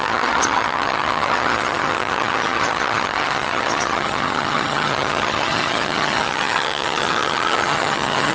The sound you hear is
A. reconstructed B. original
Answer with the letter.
A